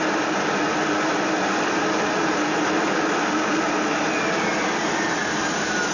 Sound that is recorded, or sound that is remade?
recorded